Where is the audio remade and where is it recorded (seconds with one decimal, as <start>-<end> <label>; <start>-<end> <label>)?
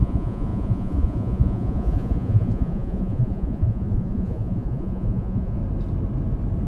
0.0-5.6 remade; 5.6-6.7 recorded